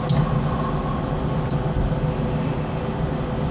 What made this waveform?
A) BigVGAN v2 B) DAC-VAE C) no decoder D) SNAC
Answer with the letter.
C